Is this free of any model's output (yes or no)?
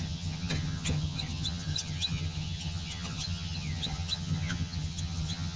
no